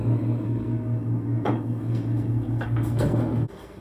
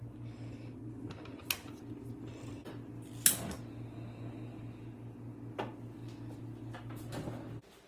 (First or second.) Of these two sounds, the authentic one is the second